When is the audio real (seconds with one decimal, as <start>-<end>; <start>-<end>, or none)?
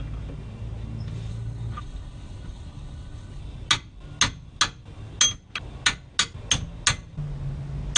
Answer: 0.0-1.3; 3.4-8.0